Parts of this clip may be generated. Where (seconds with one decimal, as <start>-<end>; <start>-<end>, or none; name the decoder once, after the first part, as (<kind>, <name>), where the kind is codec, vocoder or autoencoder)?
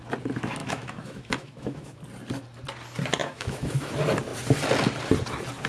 0.6-2.0 (autoencoder, DAC-VAE); 3.2-3.9